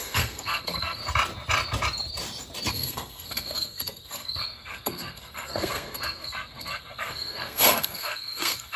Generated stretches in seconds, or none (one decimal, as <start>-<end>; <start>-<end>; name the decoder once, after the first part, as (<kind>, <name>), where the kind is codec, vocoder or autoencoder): 0.0-1.0 (codec, SNAC); 2.7-8.8